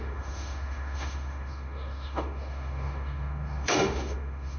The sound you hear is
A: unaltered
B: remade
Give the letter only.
B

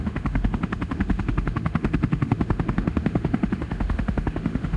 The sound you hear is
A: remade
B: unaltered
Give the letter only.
A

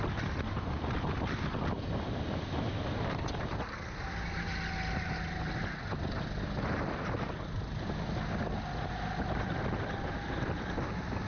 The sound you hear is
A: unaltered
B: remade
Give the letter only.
A